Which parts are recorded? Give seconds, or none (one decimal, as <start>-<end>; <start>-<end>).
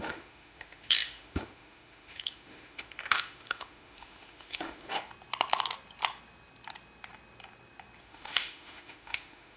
5.1-8.0